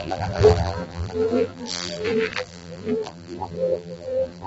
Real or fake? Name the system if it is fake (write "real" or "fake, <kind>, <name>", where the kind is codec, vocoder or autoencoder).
fake, vocoder, BigVGAN v2